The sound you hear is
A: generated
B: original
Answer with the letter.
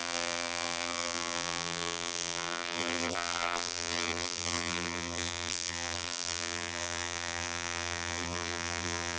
A